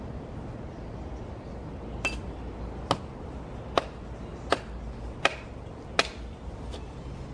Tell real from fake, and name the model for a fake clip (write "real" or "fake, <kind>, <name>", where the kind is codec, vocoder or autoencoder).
real